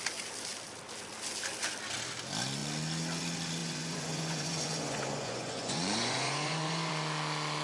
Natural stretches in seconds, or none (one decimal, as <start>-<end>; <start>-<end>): 0.0-3.6; 6.9-7.6